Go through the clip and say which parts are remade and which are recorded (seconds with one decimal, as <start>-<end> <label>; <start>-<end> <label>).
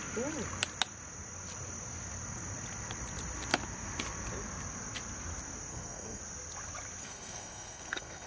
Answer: 0.0-5.7 recorded; 5.7-6.2 remade; 6.2-7.0 recorded; 7.0-8.3 remade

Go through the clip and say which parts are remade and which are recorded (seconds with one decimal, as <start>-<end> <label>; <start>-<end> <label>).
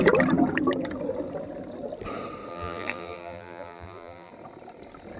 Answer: 0.0-2.5 recorded; 2.5-4.3 remade; 4.3-5.2 recorded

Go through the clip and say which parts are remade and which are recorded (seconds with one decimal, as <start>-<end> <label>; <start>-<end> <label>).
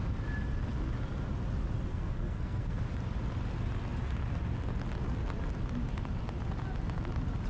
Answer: 0.0-1.9 recorded; 1.9-2.8 remade; 2.8-7.5 recorded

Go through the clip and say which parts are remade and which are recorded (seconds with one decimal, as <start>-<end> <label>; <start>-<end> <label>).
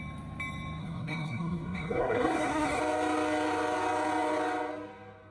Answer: 0.0-0.8 recorded; 0.8-2.8 remade; 2.8-5.3 recorded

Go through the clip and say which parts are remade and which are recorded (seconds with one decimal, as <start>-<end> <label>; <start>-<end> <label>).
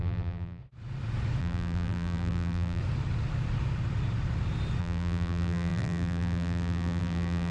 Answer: 0.0-0.6 remade; 0.6-1.4 recorded; 1.4-2.8 remade; 2.8-4.8 recorded; 4.8-7.5 remade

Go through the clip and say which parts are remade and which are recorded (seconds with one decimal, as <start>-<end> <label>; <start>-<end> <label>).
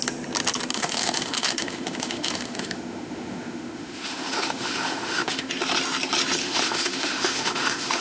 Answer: 0.0-0.7 recorded; 0.7-5.5 remade; 5.5-6.4 recorded; 6.4-8.0 remade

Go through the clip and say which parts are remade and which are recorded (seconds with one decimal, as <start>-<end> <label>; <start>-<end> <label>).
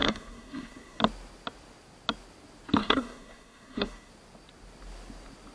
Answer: 0.0-1.0 remade; 1.0-2.8 recorded; 2.8-4.1 remade; 4.1-5.5 recorded